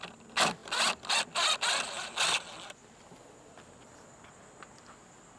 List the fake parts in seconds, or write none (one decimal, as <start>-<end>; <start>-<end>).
none